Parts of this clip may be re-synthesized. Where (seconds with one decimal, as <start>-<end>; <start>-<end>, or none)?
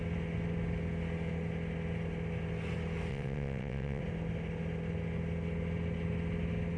3.1-4.0